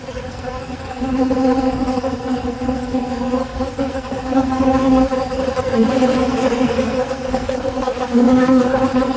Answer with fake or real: fake